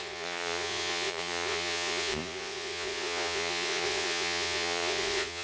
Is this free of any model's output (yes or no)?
no